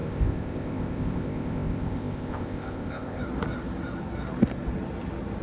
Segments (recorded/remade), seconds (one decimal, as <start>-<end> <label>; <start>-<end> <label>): 0.0-3.2 remade; 3.2-5.4 recorded

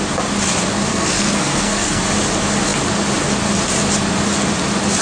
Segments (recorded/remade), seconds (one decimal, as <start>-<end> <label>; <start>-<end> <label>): 0.0-0.9 recorded; 0.9-2.0 remade; 2.0-5.0 recorded

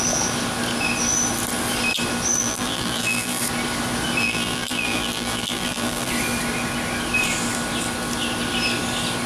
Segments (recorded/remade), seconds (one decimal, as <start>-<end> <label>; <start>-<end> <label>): 0.0-2.4 recorded; 2.4-3.4 remade; 3.4-4.2 recorded; 4.2-6.1 remade; 6.1-9.3 recorded

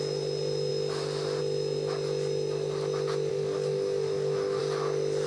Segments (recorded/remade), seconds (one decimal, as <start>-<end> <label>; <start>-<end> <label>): 0.0-3.3 recorded; 3.3-4.6 remade; 4.6-5.3 recorded

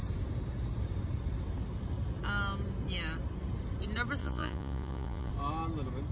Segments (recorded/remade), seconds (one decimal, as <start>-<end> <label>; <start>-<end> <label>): 0.0-4.2 recorded; 4.2-5.3 remade; 5.3-6.1 recorded

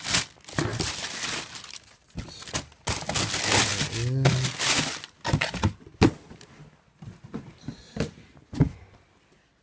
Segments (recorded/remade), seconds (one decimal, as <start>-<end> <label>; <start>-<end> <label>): 0.0-0.7 recorded; 0.7-2.5 remade; 2.5-9.6 recorded